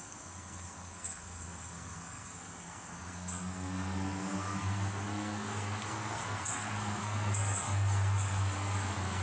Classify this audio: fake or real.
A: fake